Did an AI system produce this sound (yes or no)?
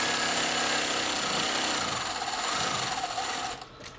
no